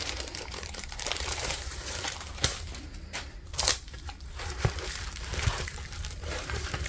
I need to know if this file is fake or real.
fake